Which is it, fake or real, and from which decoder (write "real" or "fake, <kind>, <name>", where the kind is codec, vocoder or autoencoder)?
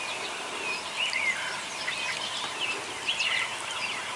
real